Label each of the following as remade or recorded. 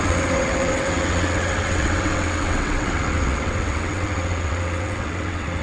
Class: remade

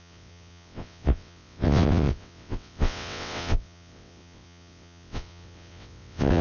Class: remade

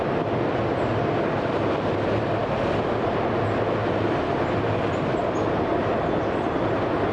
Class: recorded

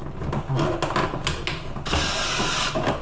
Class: recorded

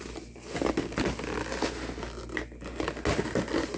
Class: recorded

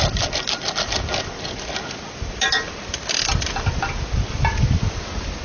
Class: recorded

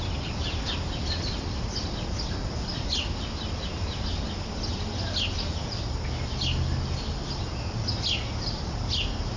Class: recorded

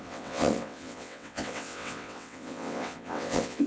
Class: remade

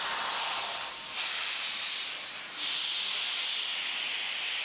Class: recorded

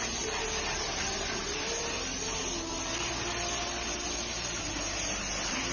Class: recorded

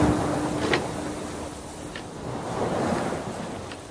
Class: recorded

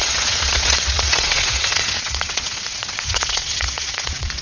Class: remade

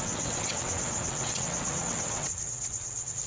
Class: remade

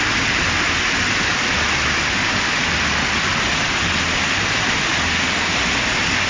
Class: recorded